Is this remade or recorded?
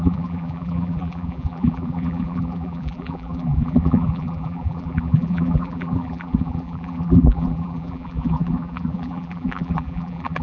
remade